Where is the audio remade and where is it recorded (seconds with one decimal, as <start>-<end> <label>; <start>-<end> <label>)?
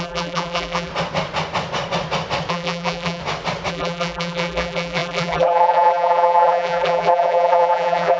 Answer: 0.0-0.9 remade; 0.9-2.5 recorded; 2.5-3.2 remade; 3.2-3.7 recorded; 3.7-8.2 remade